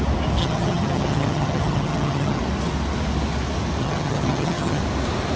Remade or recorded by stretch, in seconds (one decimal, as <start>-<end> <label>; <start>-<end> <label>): 0.0-0.4 recorded; 0.4-2.4 remade; 2.4-3.8 recorded; 3.8-4.8 remade; 4.8-5.4 recorded